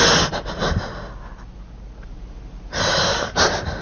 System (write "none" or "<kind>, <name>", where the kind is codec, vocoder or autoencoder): none